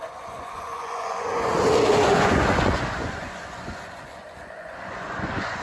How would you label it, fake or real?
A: fake